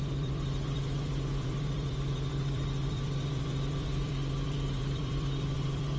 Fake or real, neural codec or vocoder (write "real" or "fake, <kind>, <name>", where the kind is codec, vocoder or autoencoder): fake, vocoder, BigVGAN v2